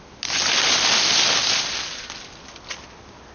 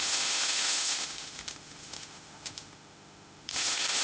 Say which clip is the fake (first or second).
second